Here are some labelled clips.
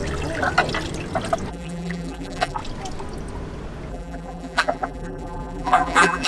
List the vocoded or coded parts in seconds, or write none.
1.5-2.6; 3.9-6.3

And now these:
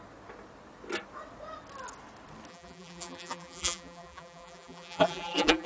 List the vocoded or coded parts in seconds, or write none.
2.5-5.7